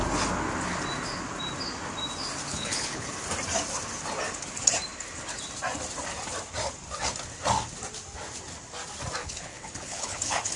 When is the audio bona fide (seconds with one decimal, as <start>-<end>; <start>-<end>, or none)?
0.0-2.5; 3.1-9.2